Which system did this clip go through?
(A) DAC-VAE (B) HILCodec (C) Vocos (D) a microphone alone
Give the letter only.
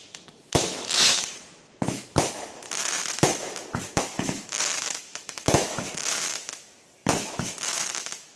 A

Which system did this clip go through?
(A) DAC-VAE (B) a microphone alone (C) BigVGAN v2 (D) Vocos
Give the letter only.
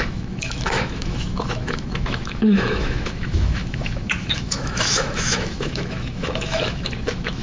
A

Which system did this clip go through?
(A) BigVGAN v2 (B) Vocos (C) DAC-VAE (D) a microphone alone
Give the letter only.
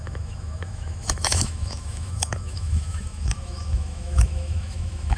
C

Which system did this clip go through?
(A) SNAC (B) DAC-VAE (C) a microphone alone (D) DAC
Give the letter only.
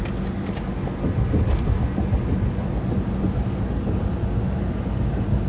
C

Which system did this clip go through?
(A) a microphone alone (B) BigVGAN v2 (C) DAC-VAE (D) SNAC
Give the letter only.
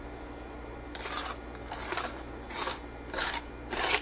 A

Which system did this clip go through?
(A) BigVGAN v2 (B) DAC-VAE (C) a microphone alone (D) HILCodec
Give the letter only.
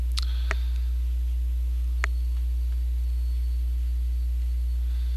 C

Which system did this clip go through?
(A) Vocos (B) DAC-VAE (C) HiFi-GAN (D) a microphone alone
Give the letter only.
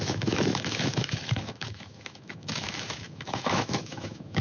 B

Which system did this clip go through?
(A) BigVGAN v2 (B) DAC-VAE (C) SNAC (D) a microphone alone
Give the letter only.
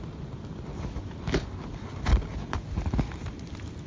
D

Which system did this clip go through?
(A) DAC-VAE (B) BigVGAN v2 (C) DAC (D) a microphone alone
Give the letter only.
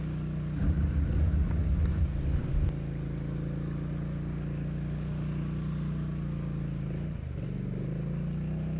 D